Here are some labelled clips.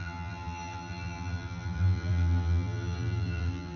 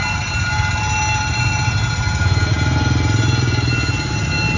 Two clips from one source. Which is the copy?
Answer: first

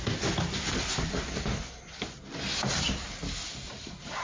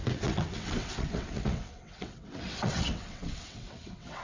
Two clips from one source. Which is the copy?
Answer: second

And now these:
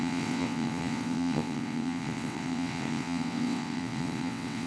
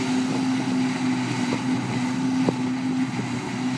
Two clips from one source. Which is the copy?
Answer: first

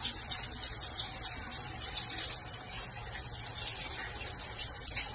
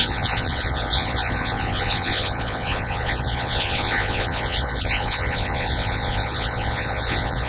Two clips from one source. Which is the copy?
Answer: second